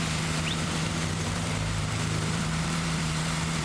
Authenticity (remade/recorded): remade